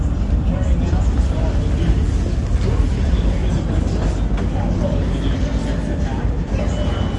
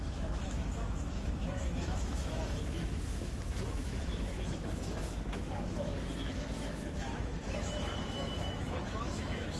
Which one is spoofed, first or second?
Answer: second